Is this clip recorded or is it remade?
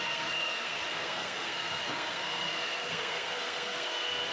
remade